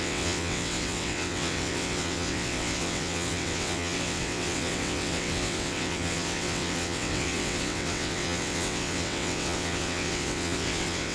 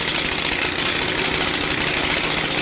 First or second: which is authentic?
second